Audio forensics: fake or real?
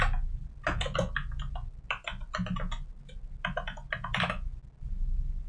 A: real